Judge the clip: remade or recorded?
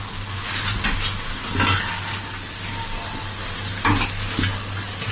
recorded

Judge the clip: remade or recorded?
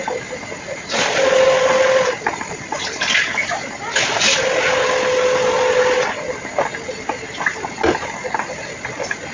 recorded